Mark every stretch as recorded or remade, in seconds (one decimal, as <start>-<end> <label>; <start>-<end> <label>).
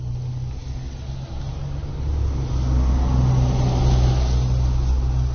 0.0-5.3 recorded